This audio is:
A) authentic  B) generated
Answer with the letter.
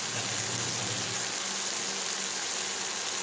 A